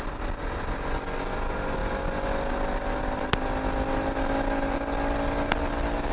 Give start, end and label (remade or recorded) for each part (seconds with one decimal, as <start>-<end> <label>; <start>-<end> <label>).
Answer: 0.0-6.1 recorded